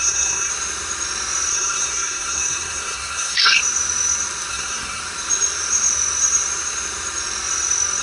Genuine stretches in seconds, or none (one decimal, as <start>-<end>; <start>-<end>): 0.5-1.5; 3.6-4.5; 5.0-8.0